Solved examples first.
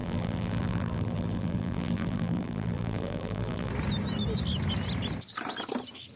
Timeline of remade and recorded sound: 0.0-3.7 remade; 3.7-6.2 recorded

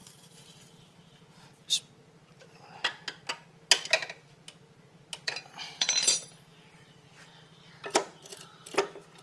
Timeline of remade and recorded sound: 0.0-5.2 recorded; 5.2-9.2 remade

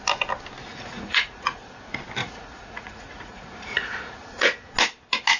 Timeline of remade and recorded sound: 0.0-0.7 recorded; 0.7-1.8 remade; 1.8-2.2 recorded; 2.2-4.7 remade; 4.7-5.4 recorded

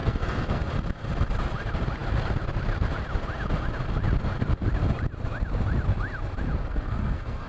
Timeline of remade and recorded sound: 0.0-0.7 remade; 0.7-6.6 recorded; 6.6-7.5 remade

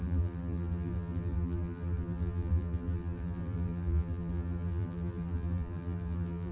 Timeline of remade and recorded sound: 0.0-6.5 remade

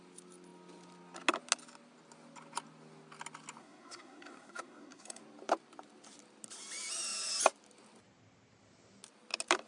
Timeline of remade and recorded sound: 0.0-3.6 recorded; 3.6-5.2 remade; 5.2-9.7 recorded

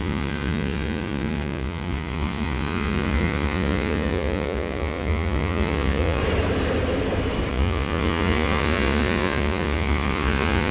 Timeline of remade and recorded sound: 0.0-6.2 remade; 6.2-7.5 recorded; 7.5-10.7 remade